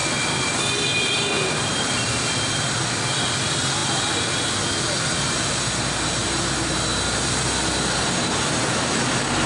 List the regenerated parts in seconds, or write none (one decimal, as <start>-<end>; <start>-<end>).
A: none